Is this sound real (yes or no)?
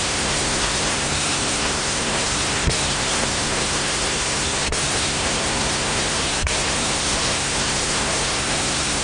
no